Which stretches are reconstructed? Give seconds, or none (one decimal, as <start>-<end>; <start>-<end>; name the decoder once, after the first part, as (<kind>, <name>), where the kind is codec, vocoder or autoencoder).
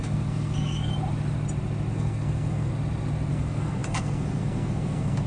0.0-0.9 (codec, SNAC); 1.9-2.7; 3.3-5.3